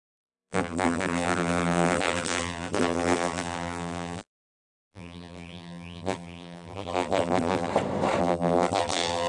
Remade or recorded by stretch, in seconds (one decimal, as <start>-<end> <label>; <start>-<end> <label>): 0.0-7.7 remade; 7.7-8.2 recorded; 8.2-9.3 remade